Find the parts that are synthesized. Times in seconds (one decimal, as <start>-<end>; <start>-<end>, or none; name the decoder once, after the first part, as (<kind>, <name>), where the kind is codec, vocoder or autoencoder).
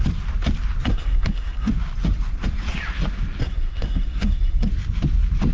0.9-1.7 (codec, SNAC); 3.4-4.7